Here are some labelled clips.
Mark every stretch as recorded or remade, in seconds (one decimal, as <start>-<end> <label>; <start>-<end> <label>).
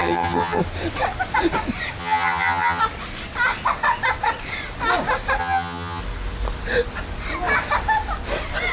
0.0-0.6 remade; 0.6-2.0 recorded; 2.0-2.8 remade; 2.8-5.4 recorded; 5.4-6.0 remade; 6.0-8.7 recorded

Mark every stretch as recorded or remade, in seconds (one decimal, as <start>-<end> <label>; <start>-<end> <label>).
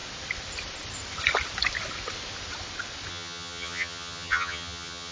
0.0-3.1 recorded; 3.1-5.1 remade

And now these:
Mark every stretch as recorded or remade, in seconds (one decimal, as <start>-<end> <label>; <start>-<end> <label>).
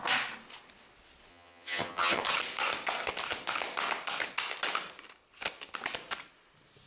0.0-1.3 recorded; 1.3-2.2 remade; 2.2-6.9 recorded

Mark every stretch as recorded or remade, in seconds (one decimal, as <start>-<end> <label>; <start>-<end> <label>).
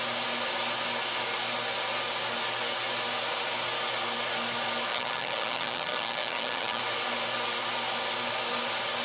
0.0-4.9 recorded; 4.9-6.8 remade; 6.8-9.0 recorded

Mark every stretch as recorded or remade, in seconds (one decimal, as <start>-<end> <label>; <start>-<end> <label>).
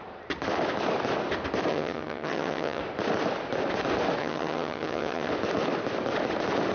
0.0-1.7 recorded; 1.7-2.8 remade; 2.8-4.2 recorded; 4.2-5.3 remade; 5.3-6.7 recorded